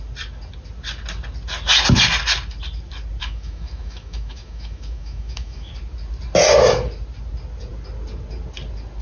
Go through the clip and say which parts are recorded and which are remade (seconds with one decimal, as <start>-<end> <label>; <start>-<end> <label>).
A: 0.0-3.2 recorded; 3.2-5.7 remade; 5.7-9.0 recorded